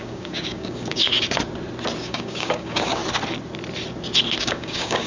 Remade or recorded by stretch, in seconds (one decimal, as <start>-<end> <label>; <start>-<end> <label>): 0.0-1.1 remade; 1.1-2.0 recorded; 2.0-3.0 remade; 3.0-4.4 recorded; 4.4-5.1 remade